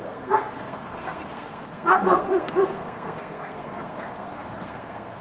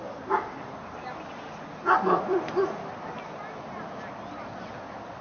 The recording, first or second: second